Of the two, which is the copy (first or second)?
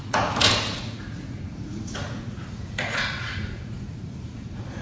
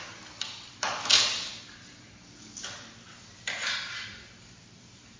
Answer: first